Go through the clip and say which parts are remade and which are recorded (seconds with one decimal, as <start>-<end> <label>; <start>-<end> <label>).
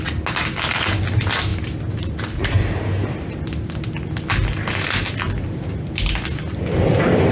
0.0-7.3 recorded